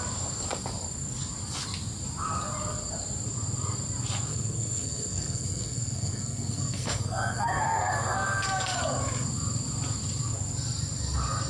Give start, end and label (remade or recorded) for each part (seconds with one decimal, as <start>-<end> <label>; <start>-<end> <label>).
0.0-4.3 recorded; 4.3-8.8 remade; 8.8-11.5 recorded